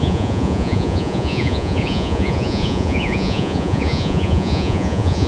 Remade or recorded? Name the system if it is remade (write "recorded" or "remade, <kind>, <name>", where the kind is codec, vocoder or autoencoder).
remade, vocoder, Vocos